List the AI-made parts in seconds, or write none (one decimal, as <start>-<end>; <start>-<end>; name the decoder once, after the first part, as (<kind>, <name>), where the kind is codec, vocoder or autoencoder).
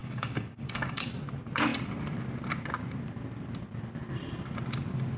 0.0-1.1 (codec, DAC)